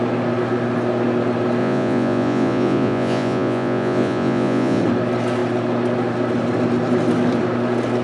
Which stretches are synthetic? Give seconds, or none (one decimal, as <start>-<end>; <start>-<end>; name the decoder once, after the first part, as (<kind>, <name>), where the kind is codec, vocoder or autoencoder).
1.6-4.8 (vocoder, Vocos)

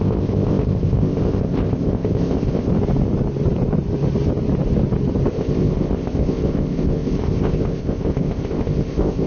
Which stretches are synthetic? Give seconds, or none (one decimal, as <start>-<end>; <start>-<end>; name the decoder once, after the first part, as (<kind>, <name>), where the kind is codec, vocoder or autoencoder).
0.0-2.7 (codec, ZipCodec); 5.3-9.3

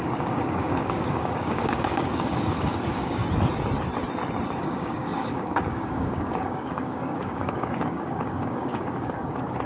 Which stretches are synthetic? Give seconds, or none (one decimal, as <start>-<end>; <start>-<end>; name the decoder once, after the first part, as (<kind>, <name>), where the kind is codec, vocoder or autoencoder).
0.0-3.2 (codec, DAC); 4.6-9.7

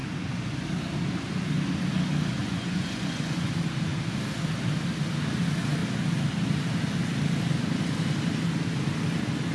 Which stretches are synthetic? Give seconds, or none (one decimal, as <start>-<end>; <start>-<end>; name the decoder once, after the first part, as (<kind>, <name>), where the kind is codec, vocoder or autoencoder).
2.4-3.5 (vocoder, Vocos)

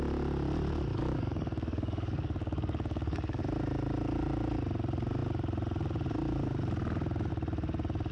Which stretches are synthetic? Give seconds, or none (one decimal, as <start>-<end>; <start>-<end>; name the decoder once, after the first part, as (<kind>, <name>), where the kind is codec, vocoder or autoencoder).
0.9-3.4 (codec, DAC)

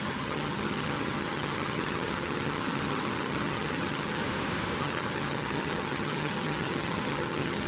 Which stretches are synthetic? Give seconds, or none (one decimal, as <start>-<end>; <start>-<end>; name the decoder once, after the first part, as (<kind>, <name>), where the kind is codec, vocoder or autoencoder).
0.0-4.2 (vocoder, HiFi-GAN); 4.8-7.7

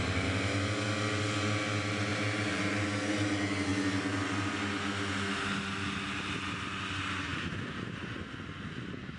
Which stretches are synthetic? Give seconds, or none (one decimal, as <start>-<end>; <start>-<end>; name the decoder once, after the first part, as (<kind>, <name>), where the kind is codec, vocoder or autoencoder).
2.1-3.3 (vocoder, BigVGAN v2); 7.3-8.1

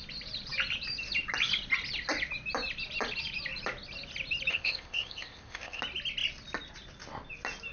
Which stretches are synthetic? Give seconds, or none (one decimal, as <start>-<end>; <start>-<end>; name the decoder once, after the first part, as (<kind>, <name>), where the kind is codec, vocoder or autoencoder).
4.5-5.8 (codec, ZipCodec)